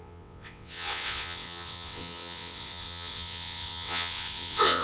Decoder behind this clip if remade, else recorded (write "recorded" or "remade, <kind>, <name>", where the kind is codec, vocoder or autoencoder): remade, vocoder, WaveNeXt